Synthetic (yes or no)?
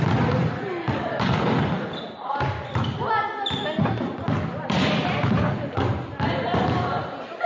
no